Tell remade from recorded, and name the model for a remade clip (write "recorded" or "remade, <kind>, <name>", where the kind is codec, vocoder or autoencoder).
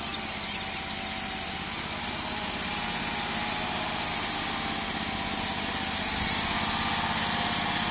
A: recorded